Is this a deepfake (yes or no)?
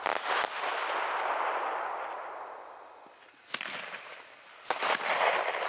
no